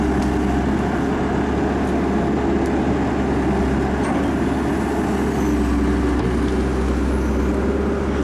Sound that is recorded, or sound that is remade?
recorded